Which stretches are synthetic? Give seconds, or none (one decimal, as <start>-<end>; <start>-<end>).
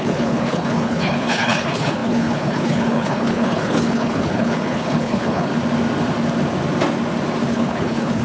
0.0-5.5; 7.5-8.2